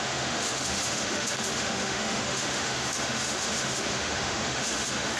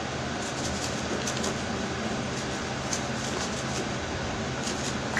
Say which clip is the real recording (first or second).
second